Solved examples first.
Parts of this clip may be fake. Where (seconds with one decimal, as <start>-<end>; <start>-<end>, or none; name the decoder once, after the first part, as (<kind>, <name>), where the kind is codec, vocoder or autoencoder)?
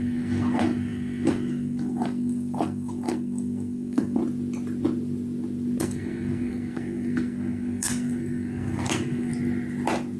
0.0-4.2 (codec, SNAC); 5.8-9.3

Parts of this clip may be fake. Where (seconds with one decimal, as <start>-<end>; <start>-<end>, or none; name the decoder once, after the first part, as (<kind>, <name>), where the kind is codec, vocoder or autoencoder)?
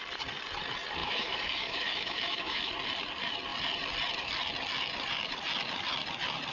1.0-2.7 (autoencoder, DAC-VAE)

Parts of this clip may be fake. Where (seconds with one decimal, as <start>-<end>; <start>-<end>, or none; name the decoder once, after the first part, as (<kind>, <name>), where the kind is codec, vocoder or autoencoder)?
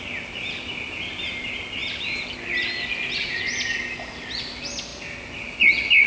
none